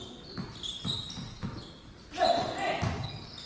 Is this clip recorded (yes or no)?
yes